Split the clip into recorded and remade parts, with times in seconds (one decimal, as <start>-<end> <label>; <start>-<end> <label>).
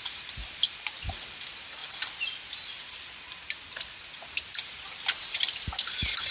0.0-6.3 recorded